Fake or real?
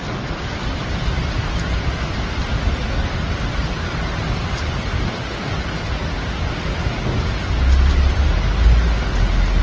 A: real